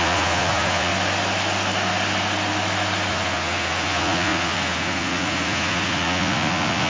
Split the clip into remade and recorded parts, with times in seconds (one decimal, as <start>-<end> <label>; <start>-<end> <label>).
0.0-0.9 remade; 0.9-3.1 recorded; 3.1-6.9 remade